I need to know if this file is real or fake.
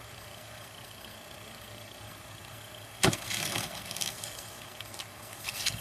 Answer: fake